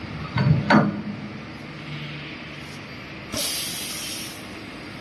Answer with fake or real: real